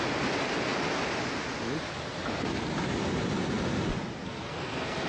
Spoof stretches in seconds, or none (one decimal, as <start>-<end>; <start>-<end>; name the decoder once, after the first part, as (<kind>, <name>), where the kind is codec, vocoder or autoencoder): 4.2-5.1 (codec, SNAC)